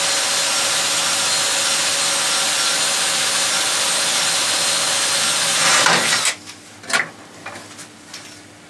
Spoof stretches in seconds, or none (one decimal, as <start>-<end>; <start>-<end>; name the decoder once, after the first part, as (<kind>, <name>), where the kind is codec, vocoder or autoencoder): none